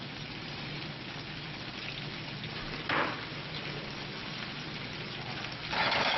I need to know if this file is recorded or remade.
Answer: recorded